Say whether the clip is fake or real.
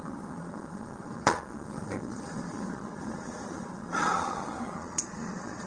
fake